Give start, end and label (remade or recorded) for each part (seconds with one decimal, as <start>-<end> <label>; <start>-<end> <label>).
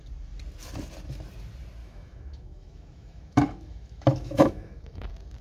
0.0-1.8 recorded; 1.8-5.0 remade; 5.0-5.4 recorded